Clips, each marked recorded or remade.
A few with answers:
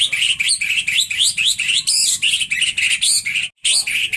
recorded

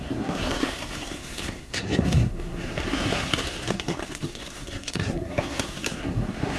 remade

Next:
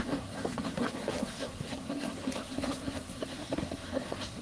remade